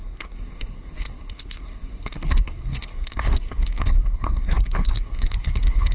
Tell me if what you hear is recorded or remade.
remade